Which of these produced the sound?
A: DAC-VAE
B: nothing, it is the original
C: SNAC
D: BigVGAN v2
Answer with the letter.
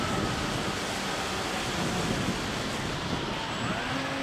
B